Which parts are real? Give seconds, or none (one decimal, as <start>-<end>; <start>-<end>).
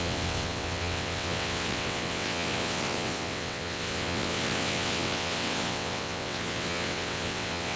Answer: none